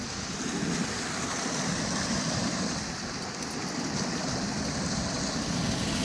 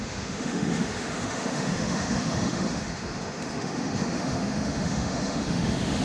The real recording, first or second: first